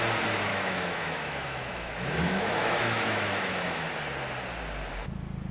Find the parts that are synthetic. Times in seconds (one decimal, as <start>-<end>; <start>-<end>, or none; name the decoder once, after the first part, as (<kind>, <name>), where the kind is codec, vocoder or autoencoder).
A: 0.5-3.8 (autoencoder, DAC-VAE)